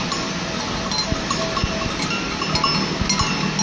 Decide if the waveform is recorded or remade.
recorded